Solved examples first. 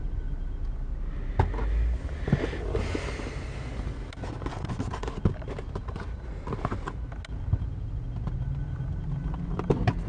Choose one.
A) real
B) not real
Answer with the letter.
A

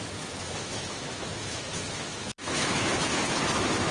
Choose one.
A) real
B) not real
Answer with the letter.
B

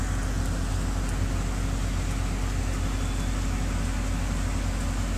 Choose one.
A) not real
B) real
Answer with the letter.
B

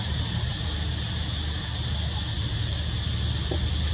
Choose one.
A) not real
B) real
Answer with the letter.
B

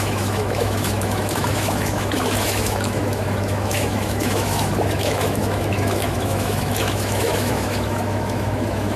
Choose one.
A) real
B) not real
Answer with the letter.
B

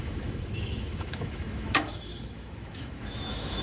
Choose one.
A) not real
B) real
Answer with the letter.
A